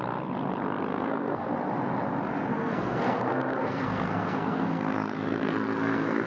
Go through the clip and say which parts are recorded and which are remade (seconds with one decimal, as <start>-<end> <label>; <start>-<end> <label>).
0.0-0.9 recorded; 0.9-1.5 remade; 1.5-2.5 recorded; 2.5-6.3 remade